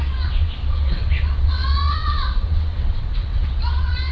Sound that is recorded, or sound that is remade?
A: remade